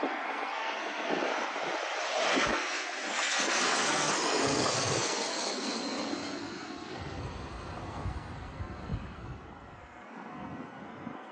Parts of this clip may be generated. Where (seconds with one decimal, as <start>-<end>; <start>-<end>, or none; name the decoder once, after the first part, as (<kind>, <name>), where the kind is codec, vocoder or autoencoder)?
0.0-1.3 (codec, SNAC); 2.3-11.3